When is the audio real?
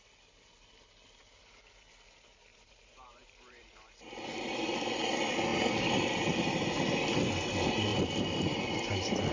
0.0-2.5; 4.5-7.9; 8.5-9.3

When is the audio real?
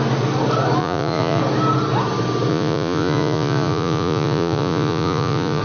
0.0-0.8; 1.4-2.5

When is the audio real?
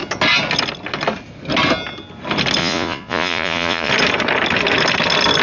0.0-2.6; 3.9-5.4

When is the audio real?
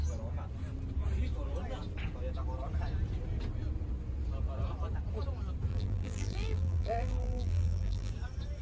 0.0-5.7; 8.1-8.6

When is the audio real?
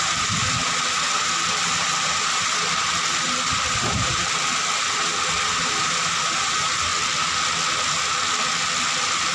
6.9-9.3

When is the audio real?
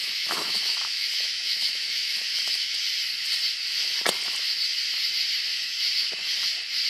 2.7-5.5; 6.3-6.9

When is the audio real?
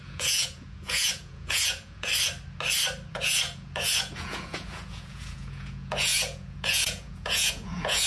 2.1-3.1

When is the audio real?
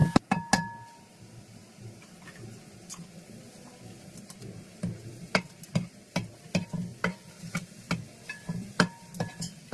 0.0-9.7